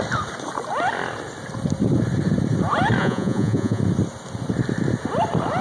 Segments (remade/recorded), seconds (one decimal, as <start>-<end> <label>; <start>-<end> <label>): 0.0-3.0 recorded; 3.0-3.8 remade; 3.8-5.6 recorded